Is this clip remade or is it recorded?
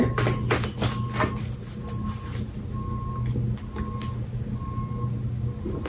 recorded